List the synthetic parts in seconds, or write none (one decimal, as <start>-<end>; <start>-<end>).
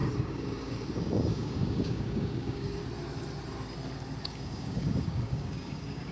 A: 0.0-2.8; 4.2-6.1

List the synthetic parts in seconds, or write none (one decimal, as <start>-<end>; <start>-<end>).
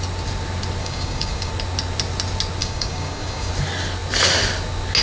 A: 0.8-1.5; 2.6-3.5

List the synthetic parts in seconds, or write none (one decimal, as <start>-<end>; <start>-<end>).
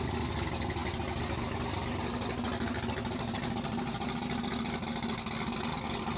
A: none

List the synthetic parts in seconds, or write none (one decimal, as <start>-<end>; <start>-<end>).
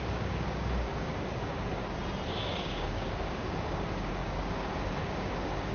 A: 0.0-1.8; 2.3-5.7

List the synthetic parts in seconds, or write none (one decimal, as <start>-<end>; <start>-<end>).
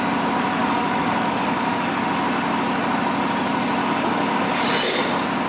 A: 0.6-2.0; 3.8-4.7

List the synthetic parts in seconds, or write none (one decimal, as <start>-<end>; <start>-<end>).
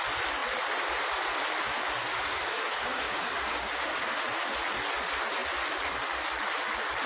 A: 2.0-4.2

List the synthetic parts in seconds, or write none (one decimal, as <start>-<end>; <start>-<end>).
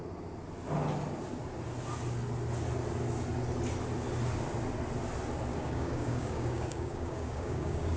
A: 5.5-8.0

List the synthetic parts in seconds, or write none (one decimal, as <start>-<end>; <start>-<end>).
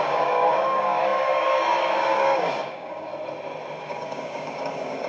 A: 0.0-3.1; 3.8-5.1